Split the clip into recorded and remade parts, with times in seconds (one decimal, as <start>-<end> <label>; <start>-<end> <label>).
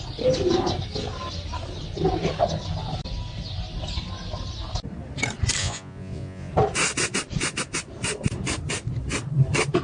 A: 0.0-5.6 recorded; 5.6-6.5 remade; 6.5-9.8 recorded